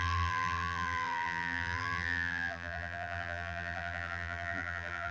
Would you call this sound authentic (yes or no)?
no